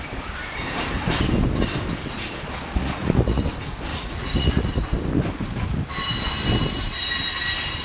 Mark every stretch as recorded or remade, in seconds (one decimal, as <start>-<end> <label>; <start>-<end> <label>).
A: 0.0-2.7 recorded; 2.7-3.4 remade; 3.4-3.9 recorded; 3.9-4.8 remade; 4.8-7.8 recorded